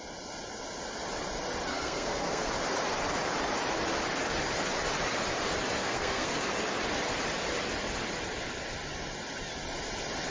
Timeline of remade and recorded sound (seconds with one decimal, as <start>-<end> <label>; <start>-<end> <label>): 0.0-1.7 recorded; 1.7-2.5 remade; 2.5-5.8 recorded; 5.8-6.4 remade; 6.4-10.3 recorded